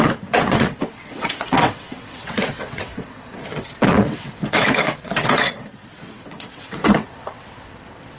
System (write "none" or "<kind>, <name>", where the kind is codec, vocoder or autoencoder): vocoder, WaveNeXt